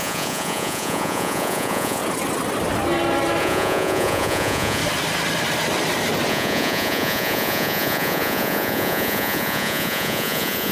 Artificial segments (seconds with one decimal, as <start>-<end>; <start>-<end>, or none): 0.0-2.0; 3.4-4.8; 6.3-10.7